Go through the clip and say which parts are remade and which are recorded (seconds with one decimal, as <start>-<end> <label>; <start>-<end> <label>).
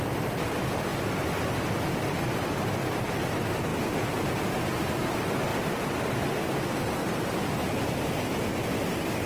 0.0-0.9 recorded; 0.9-1.9 remade; 1.9-3.7 recorded; 3.7-4.5 remade; 4.5-5.5 recorded; 5.5-6.1 remade; 6.1-7.0 recorded; 7.0-7.6 remade; 7.6-9.3 recorded